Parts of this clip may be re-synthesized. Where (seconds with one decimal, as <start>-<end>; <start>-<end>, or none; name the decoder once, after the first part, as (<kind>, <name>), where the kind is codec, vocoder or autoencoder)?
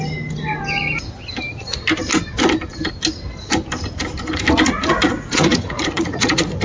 4.9-6.6 (vocoder, Vocos)